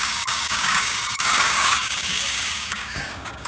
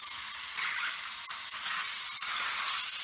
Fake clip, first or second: first